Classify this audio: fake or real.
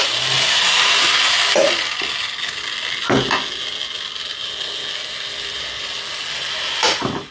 real